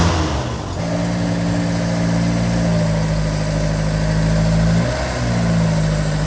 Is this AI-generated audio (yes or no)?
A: no